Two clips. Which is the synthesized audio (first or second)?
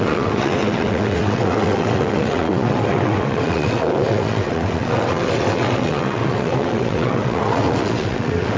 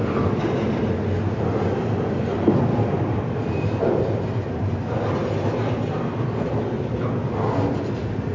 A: first